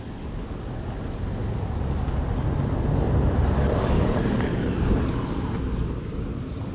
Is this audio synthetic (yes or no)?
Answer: no